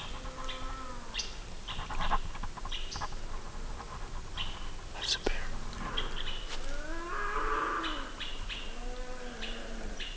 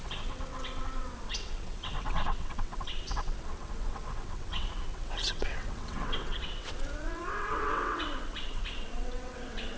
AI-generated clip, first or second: second